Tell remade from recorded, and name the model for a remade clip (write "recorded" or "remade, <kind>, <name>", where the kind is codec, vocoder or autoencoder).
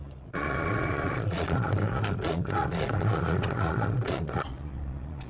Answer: remade, vocoder, Vocos